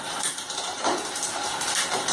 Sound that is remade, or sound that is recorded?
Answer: remade